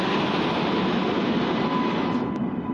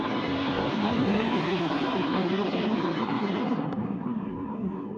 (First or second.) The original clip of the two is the first